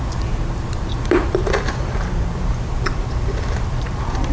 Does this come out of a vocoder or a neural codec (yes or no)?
yes